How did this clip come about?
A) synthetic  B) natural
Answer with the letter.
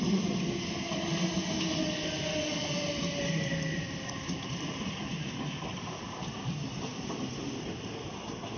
B